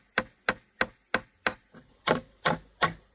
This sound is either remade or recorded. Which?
recorded